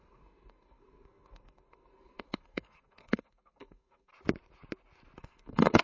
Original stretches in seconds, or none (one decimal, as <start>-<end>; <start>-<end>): 4.1-5.2